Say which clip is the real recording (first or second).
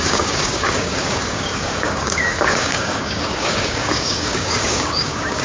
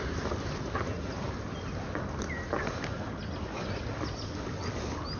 second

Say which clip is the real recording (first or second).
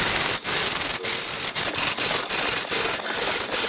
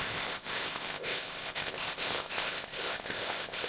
first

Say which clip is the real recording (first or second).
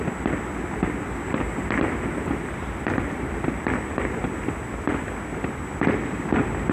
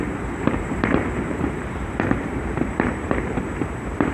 first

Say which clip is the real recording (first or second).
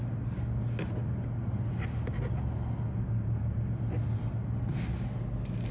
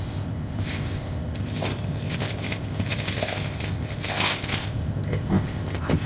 first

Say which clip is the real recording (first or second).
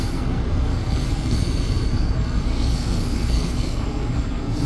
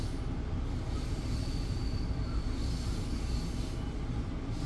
second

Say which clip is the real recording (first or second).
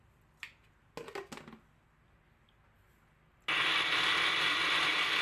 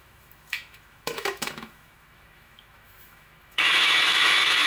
first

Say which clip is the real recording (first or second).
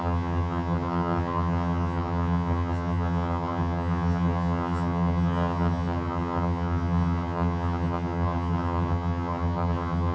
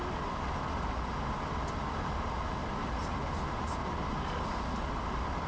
second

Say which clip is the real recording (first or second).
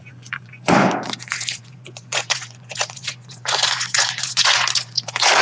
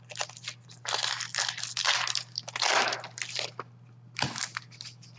second